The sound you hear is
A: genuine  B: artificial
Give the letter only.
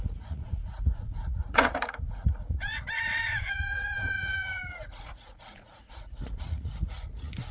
B